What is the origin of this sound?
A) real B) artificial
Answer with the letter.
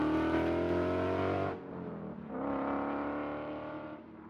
A